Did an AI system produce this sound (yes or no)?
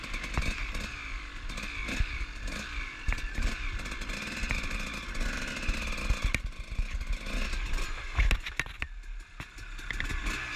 no